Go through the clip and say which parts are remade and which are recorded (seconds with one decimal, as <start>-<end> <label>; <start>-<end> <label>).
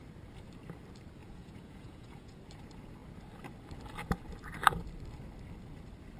0.0-1.2 recorded; 1.2-2.4 remade; 2.4-6.2 recorded